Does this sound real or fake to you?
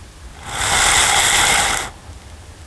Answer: real